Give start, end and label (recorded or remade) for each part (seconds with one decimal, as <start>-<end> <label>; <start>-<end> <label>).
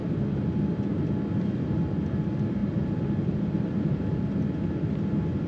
0.0-5.5 recorded